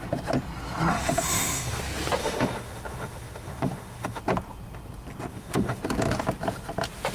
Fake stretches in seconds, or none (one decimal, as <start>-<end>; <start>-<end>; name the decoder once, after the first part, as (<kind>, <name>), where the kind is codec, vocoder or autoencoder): 0.9-1.8 (autoencoder, DAC-VAE); 2.2-4.2; 5.3-5.8